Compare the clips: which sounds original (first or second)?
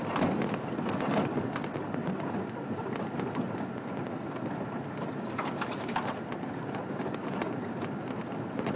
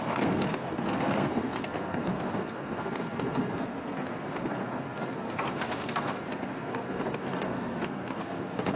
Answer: first